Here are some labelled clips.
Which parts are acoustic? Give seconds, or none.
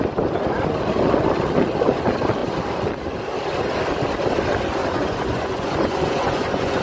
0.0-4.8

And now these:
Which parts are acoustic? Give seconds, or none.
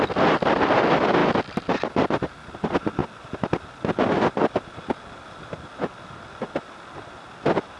0.0-7.8